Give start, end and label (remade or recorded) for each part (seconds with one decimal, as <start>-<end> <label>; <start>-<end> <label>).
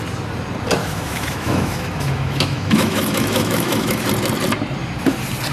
0.0-0.8 recorded; 0.8-4.1 remade; 4.1-5.5 recorded